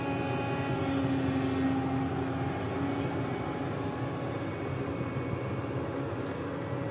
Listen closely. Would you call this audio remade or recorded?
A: recorded